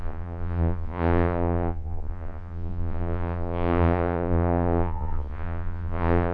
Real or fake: fake